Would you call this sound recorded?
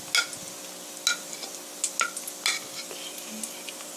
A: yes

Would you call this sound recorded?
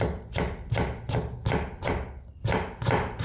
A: no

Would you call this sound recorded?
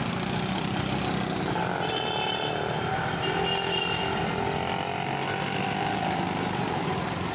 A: yes